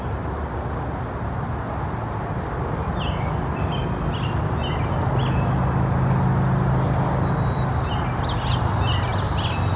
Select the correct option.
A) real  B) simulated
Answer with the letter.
A